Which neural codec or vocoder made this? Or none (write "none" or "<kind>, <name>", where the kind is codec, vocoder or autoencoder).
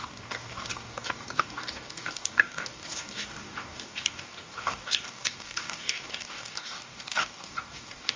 codec, DAC